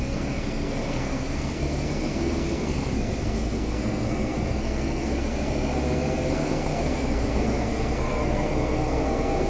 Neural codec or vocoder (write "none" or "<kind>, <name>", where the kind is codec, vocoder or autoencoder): codec, SNAC